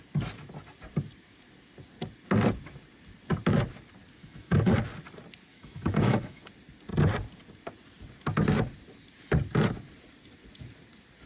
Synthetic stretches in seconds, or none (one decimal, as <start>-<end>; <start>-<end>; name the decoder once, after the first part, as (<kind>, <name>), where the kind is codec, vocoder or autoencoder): 4.2-4.7 (autoencoder, DAC-VAE); 5.5-6.5